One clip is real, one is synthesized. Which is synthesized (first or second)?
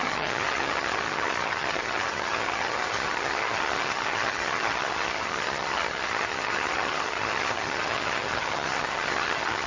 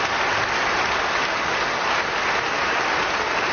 first